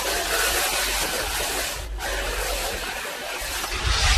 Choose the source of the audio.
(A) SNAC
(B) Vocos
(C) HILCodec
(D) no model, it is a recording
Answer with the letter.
D